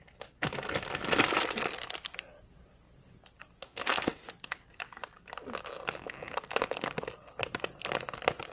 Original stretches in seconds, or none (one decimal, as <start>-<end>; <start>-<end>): 0.0-3.6; 4.3-8.5